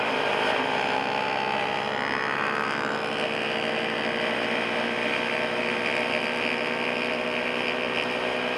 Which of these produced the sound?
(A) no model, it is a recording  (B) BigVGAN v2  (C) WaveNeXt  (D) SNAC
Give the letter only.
A